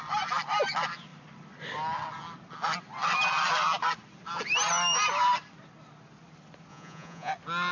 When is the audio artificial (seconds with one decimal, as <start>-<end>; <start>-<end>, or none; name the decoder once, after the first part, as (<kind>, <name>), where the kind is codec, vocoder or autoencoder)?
6.7-7.3 (vocoder, Vocos)